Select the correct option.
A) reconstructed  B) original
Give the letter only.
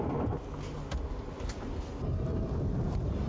B